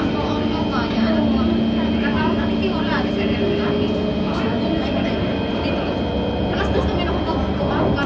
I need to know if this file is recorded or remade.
recorded